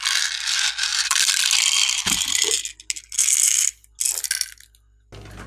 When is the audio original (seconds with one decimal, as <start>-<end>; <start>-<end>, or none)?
0.0-0.9; 2.5-5.5